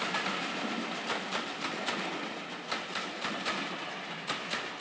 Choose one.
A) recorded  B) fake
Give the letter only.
A